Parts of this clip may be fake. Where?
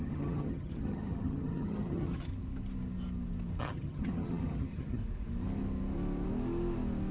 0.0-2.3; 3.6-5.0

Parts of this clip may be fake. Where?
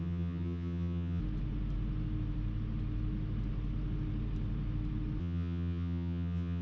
0.0-1.2; 5.2-6.6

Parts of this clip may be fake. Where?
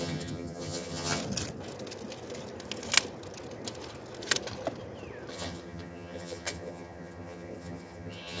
0.0-1.2; 5.3-8.4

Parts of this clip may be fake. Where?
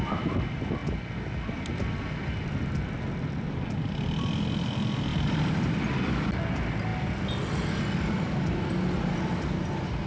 none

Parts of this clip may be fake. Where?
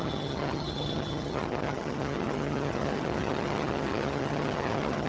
0.0-5.1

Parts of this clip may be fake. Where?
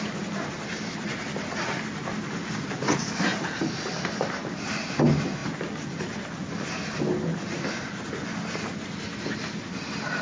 none